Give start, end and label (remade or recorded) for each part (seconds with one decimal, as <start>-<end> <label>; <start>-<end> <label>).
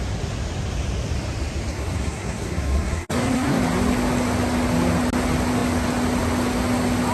0.0-1.7 recorded; 1.7-3.6 remade; 3.6-7.1 recorded